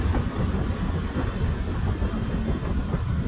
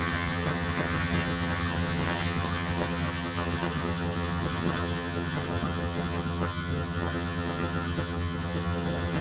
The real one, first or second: first